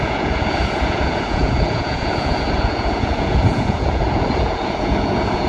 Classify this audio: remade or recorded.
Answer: remade